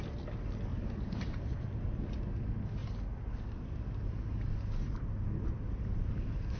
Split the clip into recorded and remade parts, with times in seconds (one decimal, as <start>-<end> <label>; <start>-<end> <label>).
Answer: 0.0-0.7 recorded; 0.7-2.0 remade; 2.0-6.6 recorded